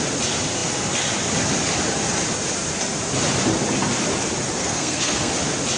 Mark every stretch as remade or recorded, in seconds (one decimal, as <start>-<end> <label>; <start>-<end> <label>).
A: 0.0-4.6 recorded; 4.6-5.3 remade; 5.3-5.8 recorded